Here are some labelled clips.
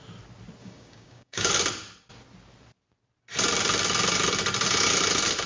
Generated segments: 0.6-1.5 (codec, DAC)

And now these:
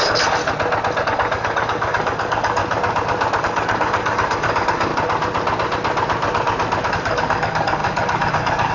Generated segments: 0.0-0.4 (codec, DAC); 1.0-2.6; 3.4-4.9; 6.9-8.7

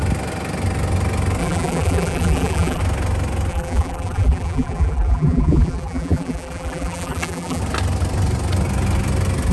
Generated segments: 1.4-2.8 (vocoder, BigVGAN v2); 3.5-7.6